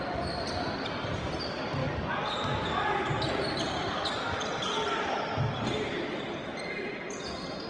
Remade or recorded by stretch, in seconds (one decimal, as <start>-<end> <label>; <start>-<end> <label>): 0.0-1.8 recorded; 1.8-5.5 remade; 5.5-7.7 recorded